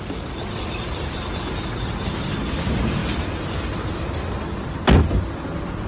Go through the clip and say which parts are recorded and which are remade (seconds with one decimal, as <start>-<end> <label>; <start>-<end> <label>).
0.0-5.9 recorded